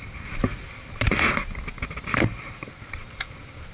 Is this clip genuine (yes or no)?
yes